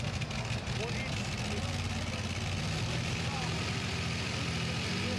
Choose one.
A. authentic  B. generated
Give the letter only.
A